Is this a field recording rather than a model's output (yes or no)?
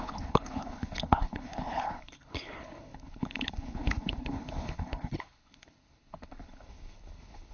no